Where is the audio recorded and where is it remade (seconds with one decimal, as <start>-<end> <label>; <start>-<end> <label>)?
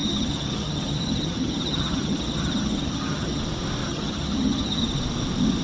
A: 0.0-3.4 remade; 3.4-3.8 recorded; 3.8-4.8 remade; 4.8-5.6 recorded